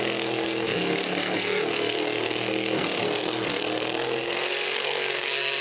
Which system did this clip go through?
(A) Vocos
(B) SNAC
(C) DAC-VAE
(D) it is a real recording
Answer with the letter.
B